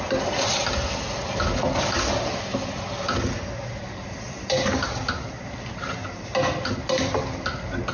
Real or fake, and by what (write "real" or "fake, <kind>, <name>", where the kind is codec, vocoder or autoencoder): real